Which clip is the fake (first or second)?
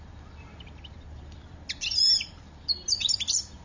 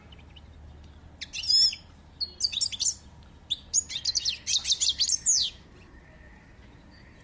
first